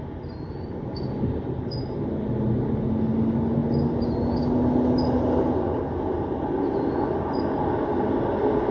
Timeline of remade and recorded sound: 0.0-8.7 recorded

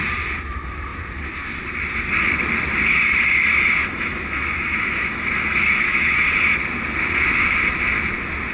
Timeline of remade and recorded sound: 0.0-3.8 recorded; 3.8-6.2 remade; 6.2-8.5 recorded